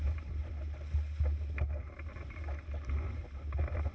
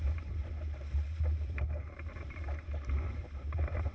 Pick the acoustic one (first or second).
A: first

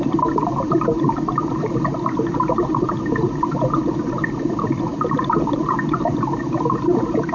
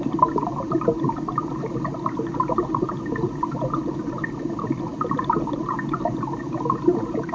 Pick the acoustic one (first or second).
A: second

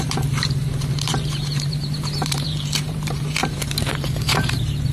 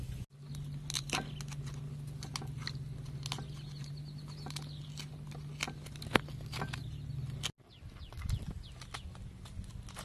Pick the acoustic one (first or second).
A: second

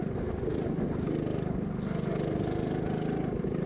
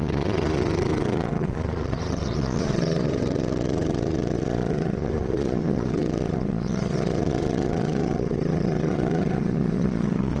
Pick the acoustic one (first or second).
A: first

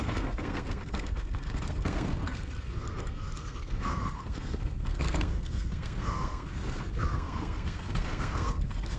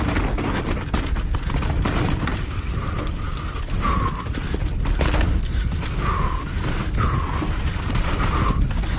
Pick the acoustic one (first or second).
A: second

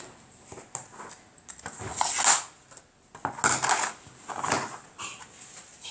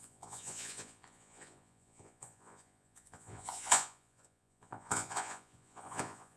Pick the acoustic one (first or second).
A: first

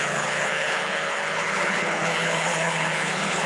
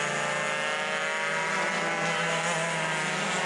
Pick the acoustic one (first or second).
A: second